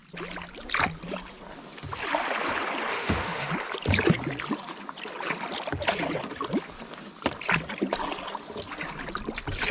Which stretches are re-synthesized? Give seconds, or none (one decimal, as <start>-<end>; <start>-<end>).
2.9-3.5